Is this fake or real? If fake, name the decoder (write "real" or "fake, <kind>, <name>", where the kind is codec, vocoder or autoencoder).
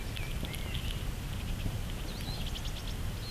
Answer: real